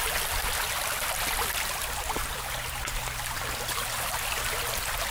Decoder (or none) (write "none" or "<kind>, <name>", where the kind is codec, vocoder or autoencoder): none